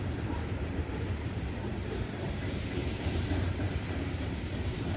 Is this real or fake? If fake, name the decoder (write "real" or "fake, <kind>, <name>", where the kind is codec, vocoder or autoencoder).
fake, vocoder, BigVGAN v2